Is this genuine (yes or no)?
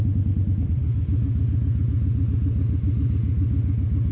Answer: yes